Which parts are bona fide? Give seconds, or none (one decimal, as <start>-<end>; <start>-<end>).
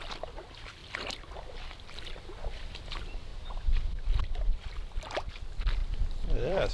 none